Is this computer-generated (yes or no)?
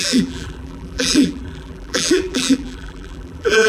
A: yes